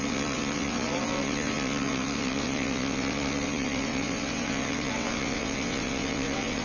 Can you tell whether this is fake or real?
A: fake